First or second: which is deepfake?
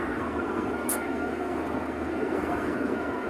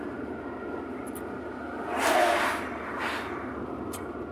first